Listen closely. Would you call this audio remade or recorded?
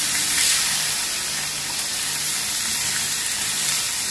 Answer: remade